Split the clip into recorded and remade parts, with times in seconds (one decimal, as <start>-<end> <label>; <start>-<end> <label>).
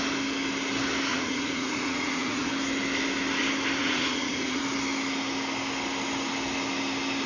0.0-1.1 recorded; 1.1-2.5 remade; 2.5-3.8 recorded; 3.8-4.6 remade; 4.6-7.3 recorded